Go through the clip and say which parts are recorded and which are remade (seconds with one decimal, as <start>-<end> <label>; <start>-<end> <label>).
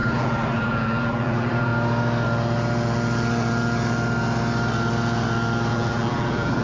0.0-1.7 remade; 1.7-5.7 recorded; 5.7-6.6 remade